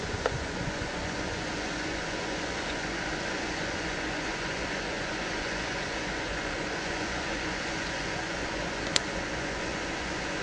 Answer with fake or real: fake